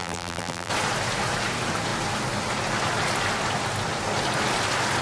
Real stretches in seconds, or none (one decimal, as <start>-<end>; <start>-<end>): 0.7-5.0